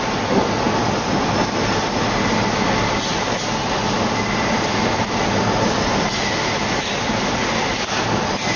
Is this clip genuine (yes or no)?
yes